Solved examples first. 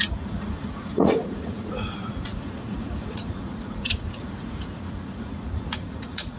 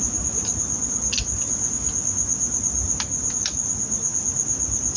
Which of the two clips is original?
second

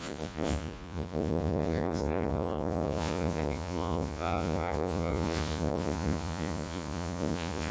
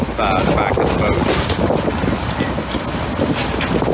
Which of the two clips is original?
second